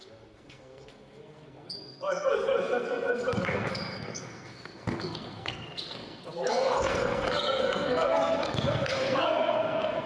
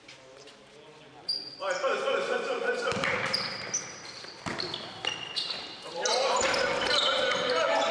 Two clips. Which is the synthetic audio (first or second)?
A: first